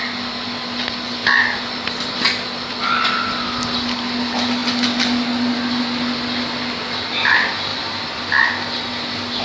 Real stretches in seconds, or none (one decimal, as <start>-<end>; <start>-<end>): 0.0-9.4